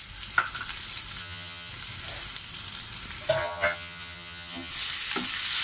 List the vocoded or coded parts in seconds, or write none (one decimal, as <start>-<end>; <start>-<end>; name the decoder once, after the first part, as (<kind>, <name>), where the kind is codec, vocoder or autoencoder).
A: 1.2-1.7 (vocoder, HiFi-GAN); 3.4-4.7